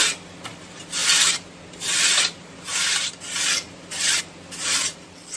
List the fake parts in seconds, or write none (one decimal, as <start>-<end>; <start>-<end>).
none